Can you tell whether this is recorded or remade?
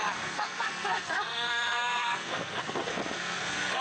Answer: remade